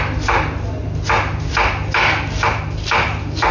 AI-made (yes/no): no